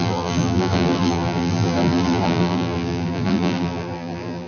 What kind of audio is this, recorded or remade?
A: remade